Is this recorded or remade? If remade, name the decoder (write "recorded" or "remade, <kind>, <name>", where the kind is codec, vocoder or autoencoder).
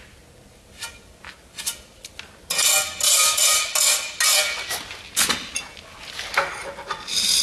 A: recorded